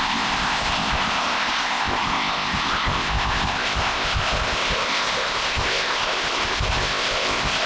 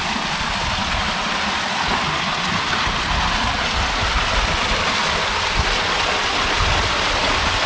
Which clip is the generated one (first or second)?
first